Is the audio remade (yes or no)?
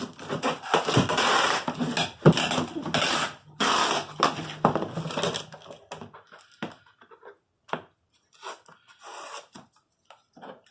no